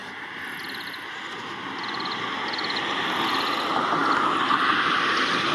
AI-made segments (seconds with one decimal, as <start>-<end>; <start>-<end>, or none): none